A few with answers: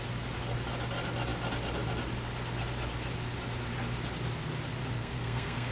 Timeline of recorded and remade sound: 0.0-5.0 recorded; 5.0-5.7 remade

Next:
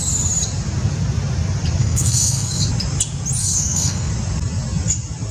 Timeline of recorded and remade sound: 0.0-1.8 recorded; 1.8-2.6 remade; 2.6-3.4 recorded; 3.4-4.1 remade; 4.1-5.3 recorded

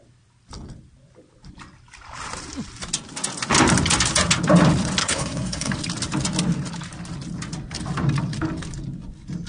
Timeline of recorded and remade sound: 0.0-5.0 recorded; 5.0-5.7 remade; 5.7-9.5 recorded

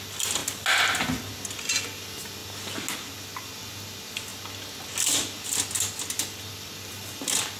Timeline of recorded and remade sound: 0.0-7.6 recorded

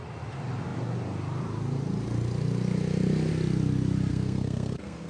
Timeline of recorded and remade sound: 0.0-4.1 recorded; 4.1-5.1 remade

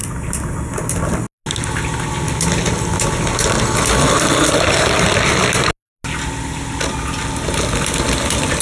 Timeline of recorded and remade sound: 0.0-8.6 recorded

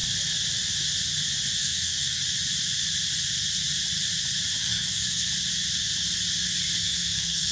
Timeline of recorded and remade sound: 0.0-1.6 recorded; 1.6-2.2 remade; 2.2-4.6 recorded; 4.6-5.3 remade; 5.3-6.8 recorded; 6.8-7.5 remade

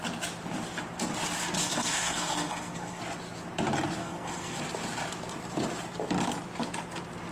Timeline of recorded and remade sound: 0.0-1.6 recorded; 1.6-3.0 remade; 3.0-4.0 recorded; 4.0-4.6 remade; 4.6-7.3 recorded